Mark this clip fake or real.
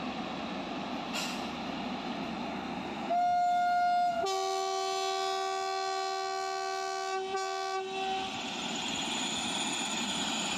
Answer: real